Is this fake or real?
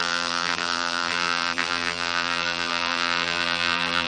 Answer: fake